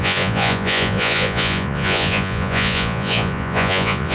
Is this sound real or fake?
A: fake